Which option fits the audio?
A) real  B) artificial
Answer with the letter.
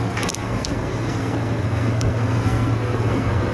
B